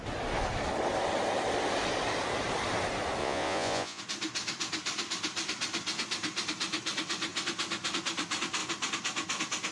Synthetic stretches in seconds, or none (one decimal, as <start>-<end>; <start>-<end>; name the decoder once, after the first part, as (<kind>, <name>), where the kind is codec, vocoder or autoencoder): 3.2-4.0 (vocoder, Vocos)